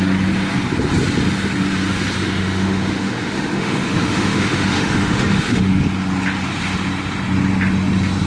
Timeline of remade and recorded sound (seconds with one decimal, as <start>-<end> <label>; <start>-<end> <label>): 0.0-2.2 recorded; 2.2-5.7 remade; 5.7-8.3 recorded